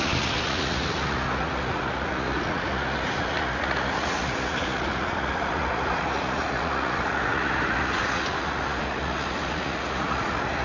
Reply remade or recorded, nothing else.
remade